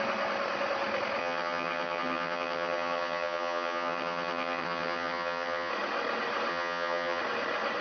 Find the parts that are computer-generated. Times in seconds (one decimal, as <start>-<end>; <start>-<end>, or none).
1.2-5.7; 6.5-7.2